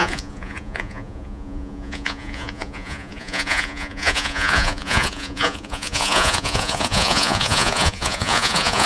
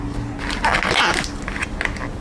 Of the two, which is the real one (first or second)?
second